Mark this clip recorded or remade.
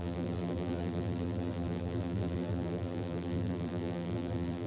remade